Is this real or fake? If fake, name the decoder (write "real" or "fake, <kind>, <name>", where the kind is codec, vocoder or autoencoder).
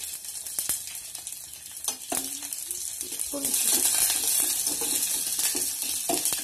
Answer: real